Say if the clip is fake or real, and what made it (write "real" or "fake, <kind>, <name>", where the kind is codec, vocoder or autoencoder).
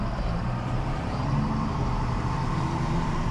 fake, vocoder, BigVGAN v2